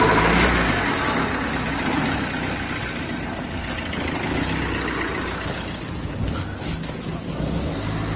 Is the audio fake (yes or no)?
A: no